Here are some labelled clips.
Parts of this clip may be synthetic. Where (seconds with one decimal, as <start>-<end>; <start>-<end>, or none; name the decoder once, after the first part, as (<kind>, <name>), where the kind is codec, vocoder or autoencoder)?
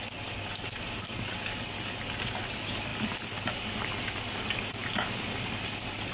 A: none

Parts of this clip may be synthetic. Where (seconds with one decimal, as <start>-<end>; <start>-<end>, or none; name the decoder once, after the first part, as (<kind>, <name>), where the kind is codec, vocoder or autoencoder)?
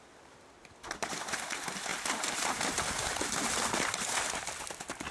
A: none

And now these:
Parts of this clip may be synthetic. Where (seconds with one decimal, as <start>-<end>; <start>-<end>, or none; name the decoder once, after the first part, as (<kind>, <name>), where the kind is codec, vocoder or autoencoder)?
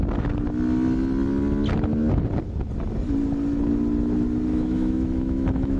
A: 4.5-5.8 (autoencoder, DAC-VAE)